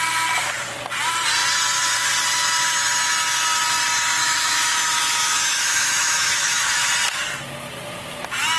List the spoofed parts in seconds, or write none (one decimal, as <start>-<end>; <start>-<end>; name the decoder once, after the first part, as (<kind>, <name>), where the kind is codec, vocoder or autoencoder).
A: 4.2-6.9 (autoencoder, DAC-VAE)